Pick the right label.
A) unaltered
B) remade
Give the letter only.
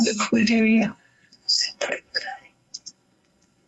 B